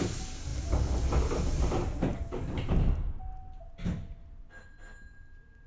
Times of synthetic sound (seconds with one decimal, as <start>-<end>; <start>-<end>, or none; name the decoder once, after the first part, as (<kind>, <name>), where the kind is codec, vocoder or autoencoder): none